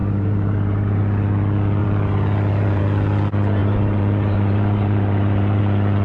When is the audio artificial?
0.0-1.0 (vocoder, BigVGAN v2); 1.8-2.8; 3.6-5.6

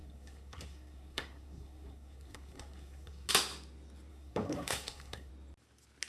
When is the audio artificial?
0.0-3.3 (codec, SNAC); 4.1-5.3

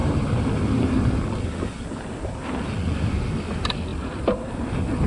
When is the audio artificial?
none

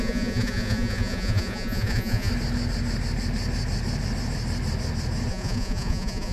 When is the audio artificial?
0.0-2.3 (vocoder, Vocos); 5.3-6.3

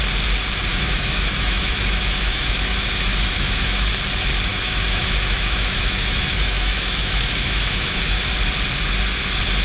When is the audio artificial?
0.7-3.9 (autoencoder, DAC-VAE); 4.5-8.2